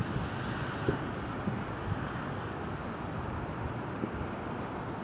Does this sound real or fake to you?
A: real